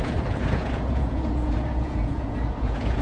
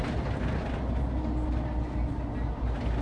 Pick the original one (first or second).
second